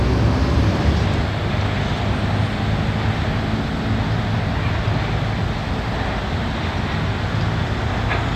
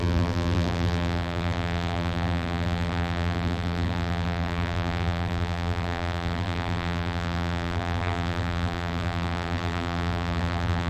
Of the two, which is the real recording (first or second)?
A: first